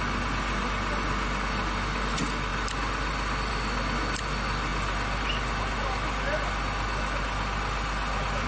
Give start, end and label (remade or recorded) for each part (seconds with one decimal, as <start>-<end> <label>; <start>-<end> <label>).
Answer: 0.0-8.5 recorded